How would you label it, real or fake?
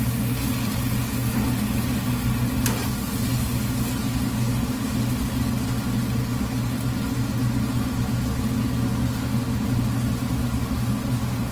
real